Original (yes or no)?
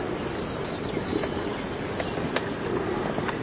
yes